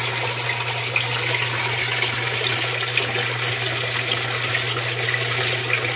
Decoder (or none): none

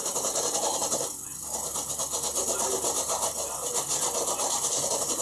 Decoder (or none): none